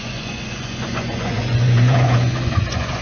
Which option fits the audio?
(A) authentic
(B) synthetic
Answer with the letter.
B